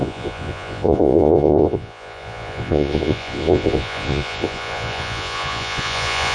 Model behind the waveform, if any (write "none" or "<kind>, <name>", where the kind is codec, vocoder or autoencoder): vocoder, Vocos